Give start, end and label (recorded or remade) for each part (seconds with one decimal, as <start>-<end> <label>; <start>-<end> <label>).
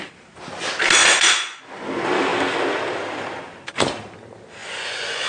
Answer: 0.0-1.0 recorded; 1.0-1.6 remade; 1.6-4.6 recorded; 4.6-5.3 remade